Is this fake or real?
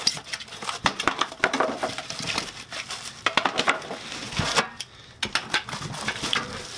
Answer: fake